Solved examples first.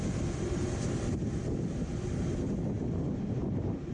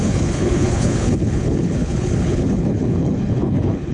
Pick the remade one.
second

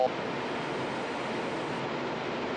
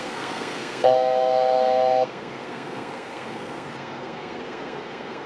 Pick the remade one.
second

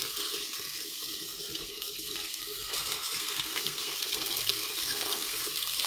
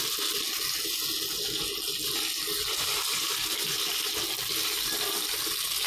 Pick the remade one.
first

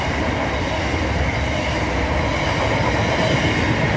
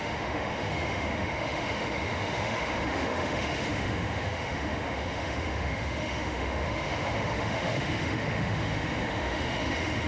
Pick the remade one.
second